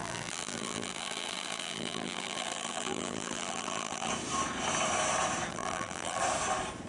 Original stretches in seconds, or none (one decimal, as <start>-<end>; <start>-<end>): 4.1-5.5; 6.2-6.9